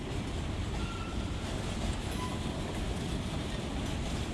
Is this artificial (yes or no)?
no